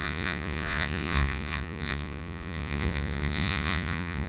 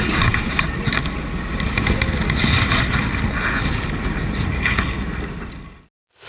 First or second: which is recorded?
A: second